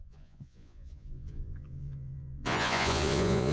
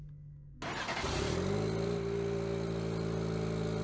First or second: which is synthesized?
first